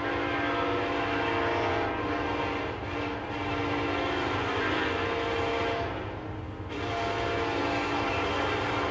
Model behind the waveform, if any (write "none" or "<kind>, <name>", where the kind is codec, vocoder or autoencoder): none